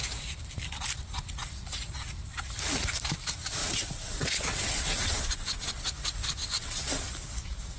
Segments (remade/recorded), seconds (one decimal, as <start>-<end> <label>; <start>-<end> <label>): 0.0-3.6 recorded; 3.6-5.7 remade; 5.7-6.4 recorded; 6.4-7.1 remade; 7.1-7.8 recorded